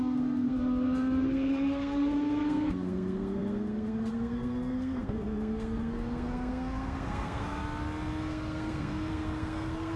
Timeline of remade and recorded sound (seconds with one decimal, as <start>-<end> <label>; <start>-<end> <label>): 0.0-7.6 remade; 7.6-8.2 recorded; 8.2-10.0 remade